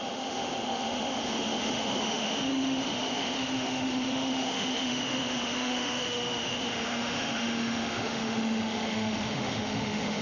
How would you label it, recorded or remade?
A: remade